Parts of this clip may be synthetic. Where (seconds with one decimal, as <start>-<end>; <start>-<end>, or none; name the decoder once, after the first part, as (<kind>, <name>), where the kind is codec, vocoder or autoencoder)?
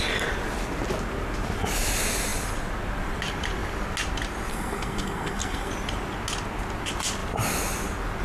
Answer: 4.5-5.7 (codec, SNAC)